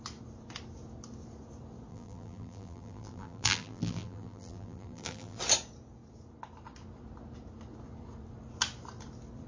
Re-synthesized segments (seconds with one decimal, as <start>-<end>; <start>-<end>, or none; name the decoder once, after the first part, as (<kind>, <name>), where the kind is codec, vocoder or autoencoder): 1.9-5.4 (vocoder, BigVGAN v2)